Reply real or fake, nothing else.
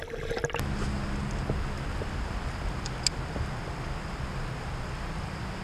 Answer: real